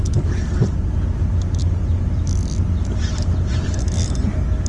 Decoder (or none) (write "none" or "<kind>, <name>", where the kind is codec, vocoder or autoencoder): none